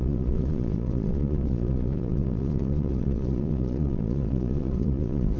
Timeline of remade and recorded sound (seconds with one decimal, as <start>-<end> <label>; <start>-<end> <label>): 0.0-5.4 remade